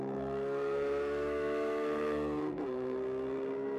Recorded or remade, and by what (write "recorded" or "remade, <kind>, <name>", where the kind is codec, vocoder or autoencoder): remade, codec, SNAC